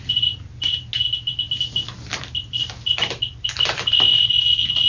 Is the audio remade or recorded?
recorded